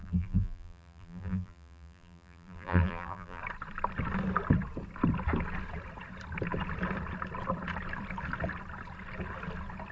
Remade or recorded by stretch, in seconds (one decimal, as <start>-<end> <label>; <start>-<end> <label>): 0.0-3.4 remade; 3.4-9.9 recorded